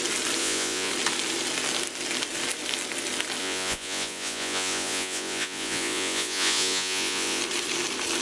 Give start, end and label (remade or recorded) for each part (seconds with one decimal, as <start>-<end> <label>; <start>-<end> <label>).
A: 0.0-0.4 recorded; 0.4-0.9 remade; 0.9-3.4 recorded; 3.4-7.4 remade; 7.4-8.2 recorded